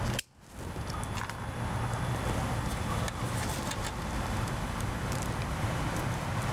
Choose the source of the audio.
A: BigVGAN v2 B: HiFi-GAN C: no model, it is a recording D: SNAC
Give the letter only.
C